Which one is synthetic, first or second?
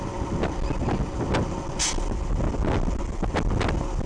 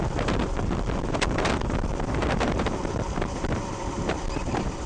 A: second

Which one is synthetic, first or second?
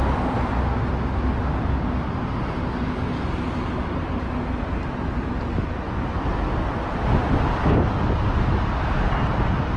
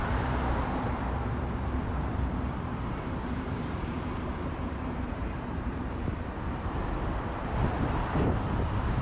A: second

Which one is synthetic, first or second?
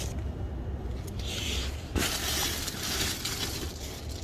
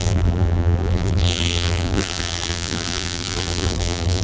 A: second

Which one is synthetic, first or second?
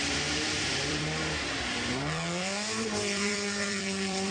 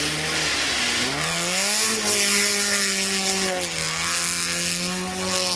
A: first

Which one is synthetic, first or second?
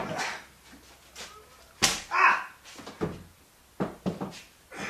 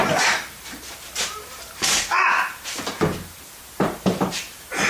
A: second